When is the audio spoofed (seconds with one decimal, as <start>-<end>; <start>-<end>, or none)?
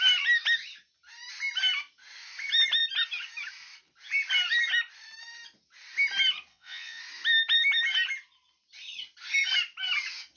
6.5-7.0